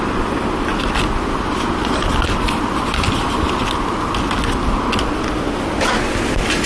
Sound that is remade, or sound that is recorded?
recorded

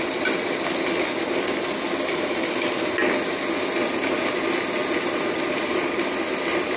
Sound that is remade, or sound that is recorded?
recorded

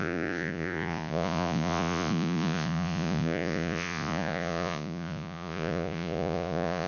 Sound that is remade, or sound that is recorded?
remade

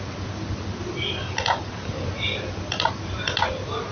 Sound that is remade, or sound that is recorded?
recorded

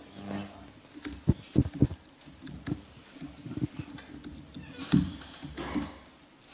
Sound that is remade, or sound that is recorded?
recorded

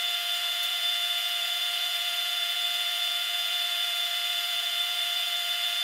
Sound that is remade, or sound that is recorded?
remade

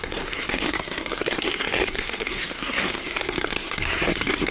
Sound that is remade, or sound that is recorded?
remade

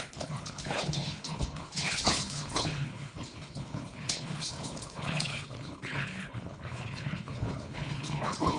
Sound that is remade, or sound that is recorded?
remade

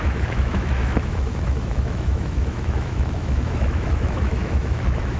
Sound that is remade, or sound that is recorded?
remade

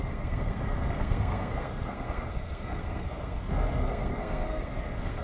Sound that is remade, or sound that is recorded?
remade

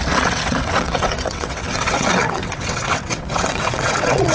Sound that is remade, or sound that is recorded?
remade